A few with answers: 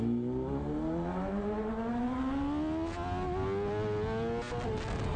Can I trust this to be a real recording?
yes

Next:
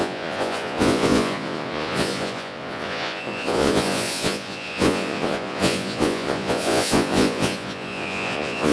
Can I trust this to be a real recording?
no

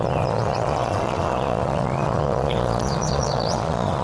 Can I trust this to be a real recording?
no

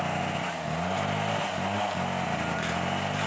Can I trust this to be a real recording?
yes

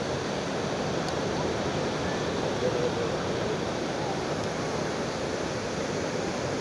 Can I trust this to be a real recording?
yes